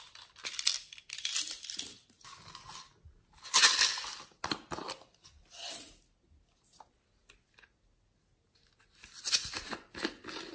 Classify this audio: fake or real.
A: real